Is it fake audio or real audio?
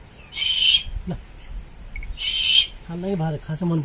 real